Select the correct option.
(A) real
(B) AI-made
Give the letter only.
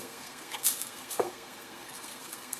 B